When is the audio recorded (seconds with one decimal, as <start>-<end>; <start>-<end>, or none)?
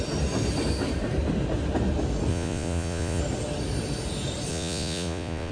0.0-2.3; 3.2-4.5